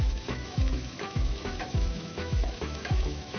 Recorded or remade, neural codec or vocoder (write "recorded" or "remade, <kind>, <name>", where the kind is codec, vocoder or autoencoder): remade, autoencoder, DAC-VAE